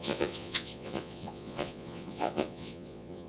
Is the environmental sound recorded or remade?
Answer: remade